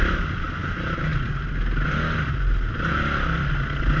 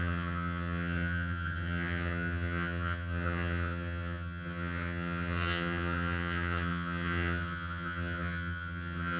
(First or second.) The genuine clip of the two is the first